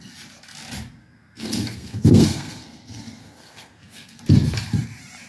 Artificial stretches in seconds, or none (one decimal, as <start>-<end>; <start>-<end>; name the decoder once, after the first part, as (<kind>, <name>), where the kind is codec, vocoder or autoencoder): 1.0-4.2 (codec, SNAC)